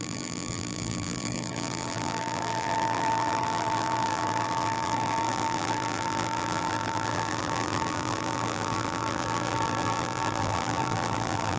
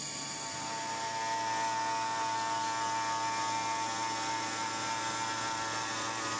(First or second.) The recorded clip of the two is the second